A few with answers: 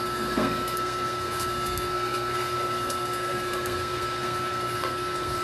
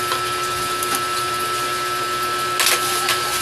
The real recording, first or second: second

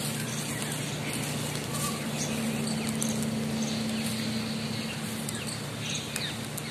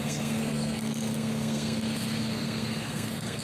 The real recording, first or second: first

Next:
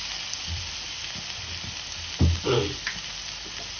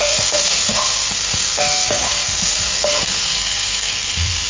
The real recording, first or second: first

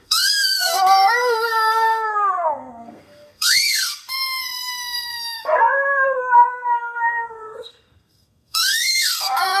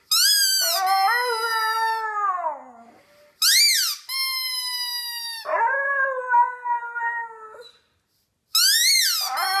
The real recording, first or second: second